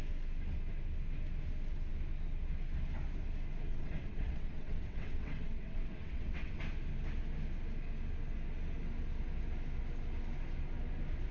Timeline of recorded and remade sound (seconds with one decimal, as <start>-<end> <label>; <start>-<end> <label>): 0.0-3.7 recorded; 3.7-6.6 remade; 6.6-11.3 recorded